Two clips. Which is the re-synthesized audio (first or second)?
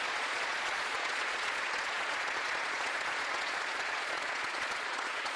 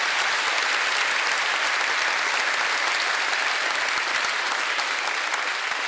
first